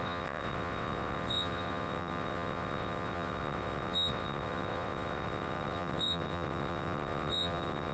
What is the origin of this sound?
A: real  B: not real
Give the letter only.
B